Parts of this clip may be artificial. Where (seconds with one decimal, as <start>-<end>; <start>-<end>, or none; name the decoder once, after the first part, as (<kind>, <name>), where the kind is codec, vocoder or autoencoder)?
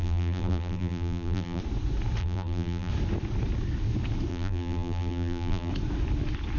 0.0-1.6 (vocoder, BigVGAN v2); 2.2-2.9; 4.3-5.7